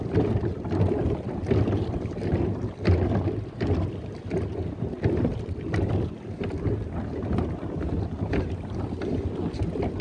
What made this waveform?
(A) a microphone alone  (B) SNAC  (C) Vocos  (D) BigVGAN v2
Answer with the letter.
A